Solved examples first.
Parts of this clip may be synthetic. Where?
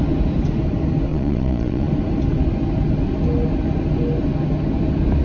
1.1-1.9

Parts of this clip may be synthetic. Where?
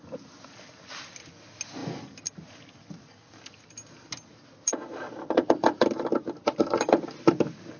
none